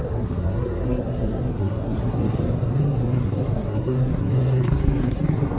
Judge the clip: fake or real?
fake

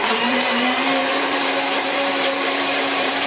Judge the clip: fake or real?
fake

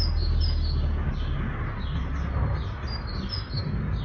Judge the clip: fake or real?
real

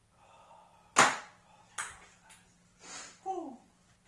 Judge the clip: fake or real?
real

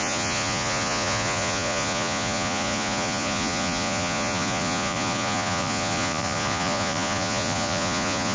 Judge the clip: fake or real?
fake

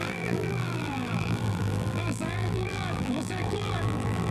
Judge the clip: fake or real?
fake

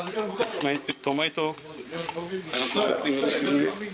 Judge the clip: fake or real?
fake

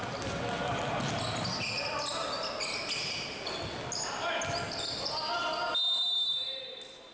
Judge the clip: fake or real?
real